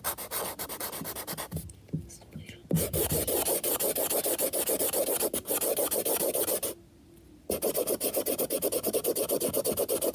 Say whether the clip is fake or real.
real